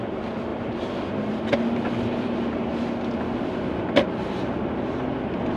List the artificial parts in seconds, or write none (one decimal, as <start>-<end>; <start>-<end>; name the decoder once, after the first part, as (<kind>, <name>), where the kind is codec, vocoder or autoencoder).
0.5-1.4 (vocoder, BigVGAN v2)